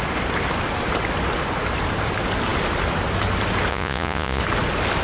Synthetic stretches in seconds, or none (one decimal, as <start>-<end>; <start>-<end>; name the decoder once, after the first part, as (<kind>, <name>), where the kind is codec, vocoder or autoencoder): 3.7-4.4 (vocoder, Vocos)